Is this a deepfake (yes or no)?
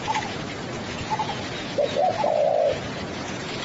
yes